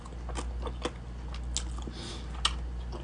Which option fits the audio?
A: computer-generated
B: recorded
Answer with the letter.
B